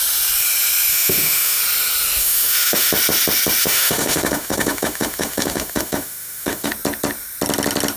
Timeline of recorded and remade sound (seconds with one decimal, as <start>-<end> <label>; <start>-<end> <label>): 0.0-0.9 recorded; 0.9-1.6 remade; 1.6-2.2 recorded; 2.2-2.9 remade; 2.9-3.6 recorded; 3.6-6.7 remade; 6.7-8.0 recorded